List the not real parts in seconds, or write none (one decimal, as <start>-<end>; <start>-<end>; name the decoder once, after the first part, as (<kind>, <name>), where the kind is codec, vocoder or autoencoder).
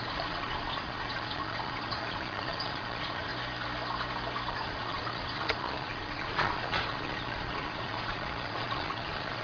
0.0-3.3 (vocoder, Vocos); 4.5-9.4